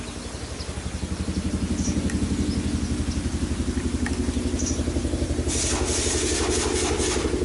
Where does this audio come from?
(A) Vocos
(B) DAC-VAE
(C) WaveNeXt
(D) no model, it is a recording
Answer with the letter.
D